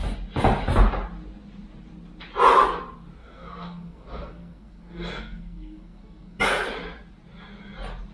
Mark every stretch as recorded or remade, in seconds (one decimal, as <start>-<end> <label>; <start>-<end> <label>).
0.0-3.2 recorded; 3.2-6.4 remade; 6.4-8.1 recorded